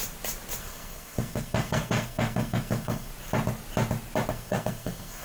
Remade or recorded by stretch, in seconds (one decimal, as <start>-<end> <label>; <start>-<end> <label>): 0.0-0.6 recorded; 0.6-3.1 remade; 3.1-4.3 recorded; 4.3-5.2 remade